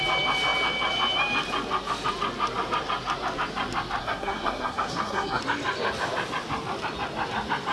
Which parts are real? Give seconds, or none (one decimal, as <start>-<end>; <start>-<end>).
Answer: 0.0-4.0; 5.4-7.7